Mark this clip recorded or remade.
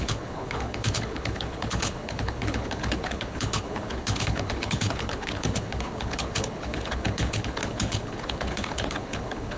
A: remade